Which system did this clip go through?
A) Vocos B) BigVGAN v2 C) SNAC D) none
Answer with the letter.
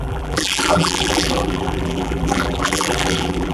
B